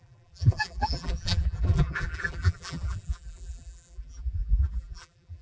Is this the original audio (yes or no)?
no